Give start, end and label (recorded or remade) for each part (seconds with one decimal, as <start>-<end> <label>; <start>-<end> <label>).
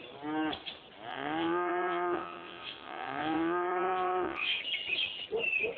0.0-1.1 recorded; 1.1-4.6 remade; 4.6-5.8 recorded